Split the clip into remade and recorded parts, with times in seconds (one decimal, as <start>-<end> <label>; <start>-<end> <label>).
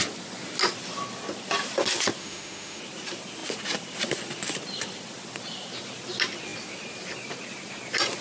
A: 0.0-2.2 recorded; 2.2-2.8 remade; 2.8-8.2 recorded